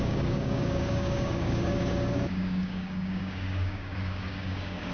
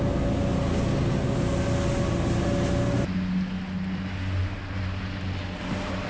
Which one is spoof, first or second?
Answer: first